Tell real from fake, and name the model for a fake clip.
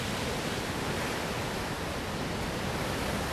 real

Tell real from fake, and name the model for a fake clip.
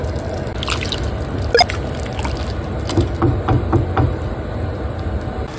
real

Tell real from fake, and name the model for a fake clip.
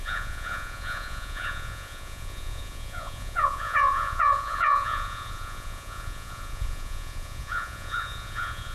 fake, vocoder, Vocos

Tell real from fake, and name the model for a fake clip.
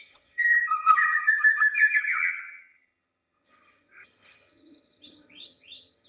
fake, vocoder, HiFi-GAN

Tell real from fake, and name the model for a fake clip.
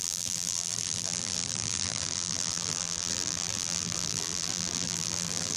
fake, vocoder, BigVGAN v2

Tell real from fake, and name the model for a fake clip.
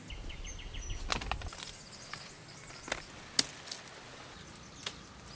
real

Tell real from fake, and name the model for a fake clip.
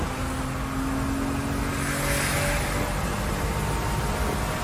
real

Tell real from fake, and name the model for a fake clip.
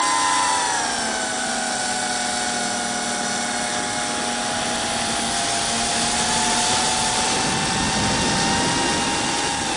real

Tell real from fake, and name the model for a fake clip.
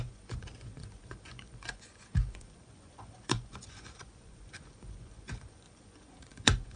fake, vocoder, Vocos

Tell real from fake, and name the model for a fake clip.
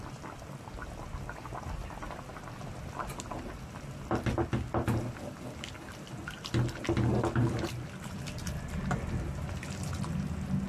real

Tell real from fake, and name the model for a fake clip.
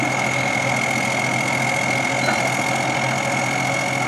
real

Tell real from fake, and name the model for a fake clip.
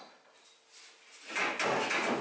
real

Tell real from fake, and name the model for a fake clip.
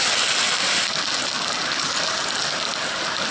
real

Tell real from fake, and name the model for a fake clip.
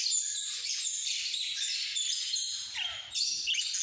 real